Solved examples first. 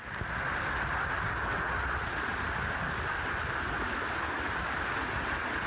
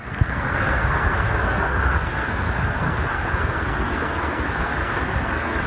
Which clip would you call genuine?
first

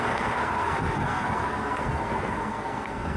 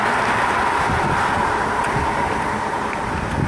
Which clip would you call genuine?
second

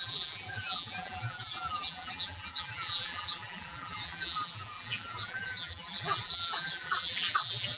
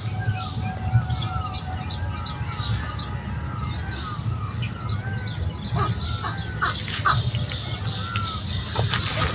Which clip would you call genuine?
second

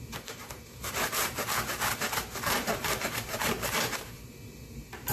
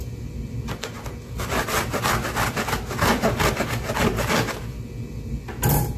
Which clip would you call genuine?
second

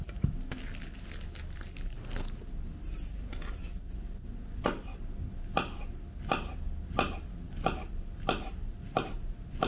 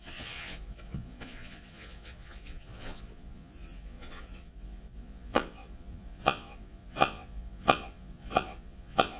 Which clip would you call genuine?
first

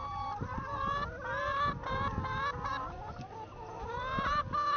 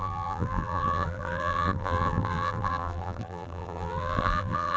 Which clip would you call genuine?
first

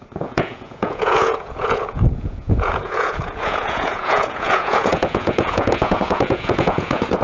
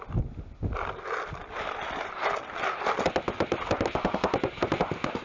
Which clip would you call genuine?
second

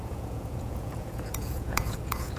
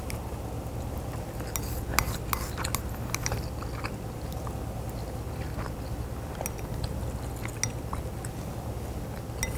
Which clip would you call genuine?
second